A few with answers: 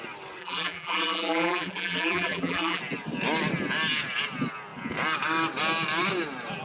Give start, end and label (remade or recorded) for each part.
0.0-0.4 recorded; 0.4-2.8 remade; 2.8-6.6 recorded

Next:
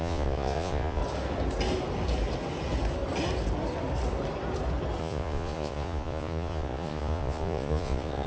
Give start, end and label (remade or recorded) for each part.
0.0-1.0 remade; 1.0-5.0 recorded; 5.0-8.3 remade

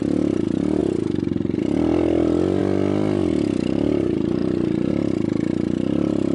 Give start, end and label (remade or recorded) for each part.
0.0-6.3 recorded

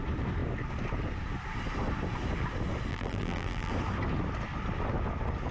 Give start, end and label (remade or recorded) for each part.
0.0-2.9 recorded; 2.9-3.7 remade; 3.7-5.5 recorded